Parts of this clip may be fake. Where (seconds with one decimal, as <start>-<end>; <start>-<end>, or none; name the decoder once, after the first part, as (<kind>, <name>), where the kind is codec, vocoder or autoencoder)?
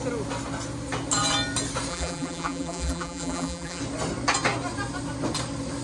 1.9-3.8 (vocoder, BigVGAN v2)